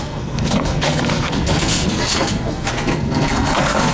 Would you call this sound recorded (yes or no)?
no